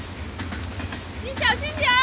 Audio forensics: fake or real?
real